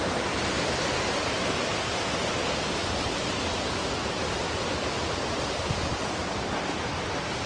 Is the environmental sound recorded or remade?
recorded